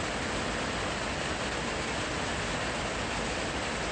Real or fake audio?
real